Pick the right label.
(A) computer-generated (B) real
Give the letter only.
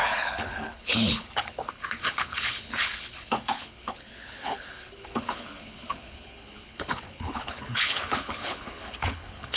A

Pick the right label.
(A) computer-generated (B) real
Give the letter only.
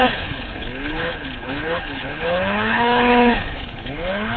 A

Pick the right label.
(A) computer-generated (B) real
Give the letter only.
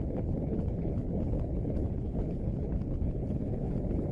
A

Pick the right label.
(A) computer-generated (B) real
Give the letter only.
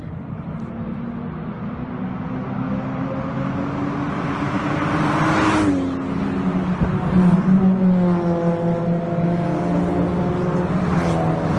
B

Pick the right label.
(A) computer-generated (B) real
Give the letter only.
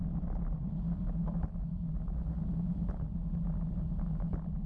B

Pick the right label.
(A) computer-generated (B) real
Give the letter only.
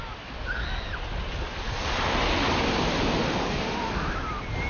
B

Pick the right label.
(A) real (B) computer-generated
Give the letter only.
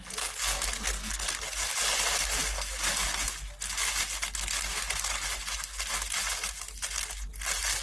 A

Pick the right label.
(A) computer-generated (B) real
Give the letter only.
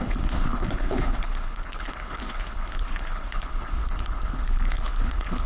A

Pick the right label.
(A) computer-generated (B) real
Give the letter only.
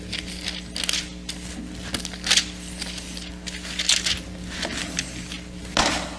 B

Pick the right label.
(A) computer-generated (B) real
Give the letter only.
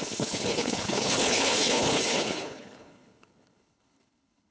A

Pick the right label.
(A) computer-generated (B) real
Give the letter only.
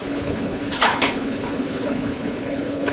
A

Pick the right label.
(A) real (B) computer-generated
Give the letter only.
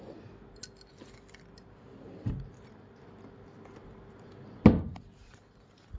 A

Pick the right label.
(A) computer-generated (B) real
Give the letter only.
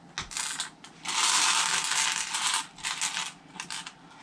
B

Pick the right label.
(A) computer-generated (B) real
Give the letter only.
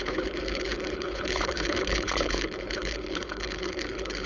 A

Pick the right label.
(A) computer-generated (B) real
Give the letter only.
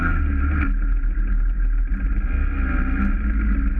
B